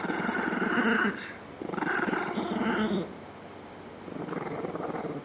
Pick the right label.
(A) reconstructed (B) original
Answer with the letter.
B